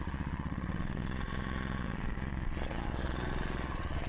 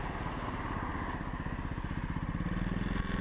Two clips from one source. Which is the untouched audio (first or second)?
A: second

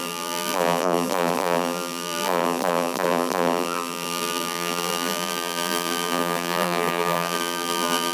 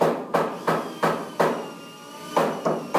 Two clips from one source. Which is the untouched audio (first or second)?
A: second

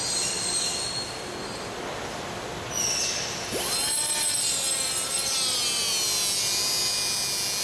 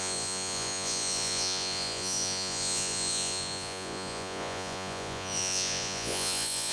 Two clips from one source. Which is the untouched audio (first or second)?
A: first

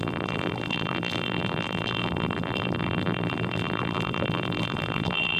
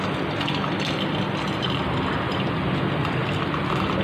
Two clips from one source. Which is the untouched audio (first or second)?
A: second